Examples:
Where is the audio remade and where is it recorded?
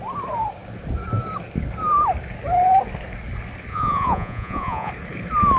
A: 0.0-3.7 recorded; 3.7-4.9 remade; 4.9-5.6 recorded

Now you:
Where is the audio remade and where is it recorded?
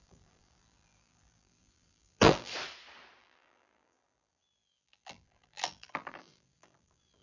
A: 0.0-2.5 remade; 2.5-3.2 recorded; 3.2-7.2 remade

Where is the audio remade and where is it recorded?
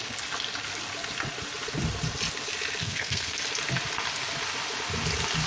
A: 0.0-2.8 recorded; 2.8-3.4 remade; 3.4-5.5 recorded